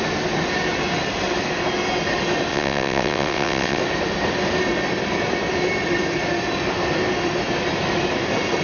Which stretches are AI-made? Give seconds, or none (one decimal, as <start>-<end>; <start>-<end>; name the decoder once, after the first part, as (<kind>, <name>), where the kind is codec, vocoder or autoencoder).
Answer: 2.5-3.8 (vocoder, WaveNeXt)